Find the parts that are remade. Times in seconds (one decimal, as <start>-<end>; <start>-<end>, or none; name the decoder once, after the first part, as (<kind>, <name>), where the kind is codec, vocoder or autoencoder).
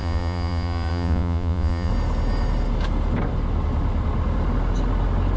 0.0-1.9 (vocoder, Vocos)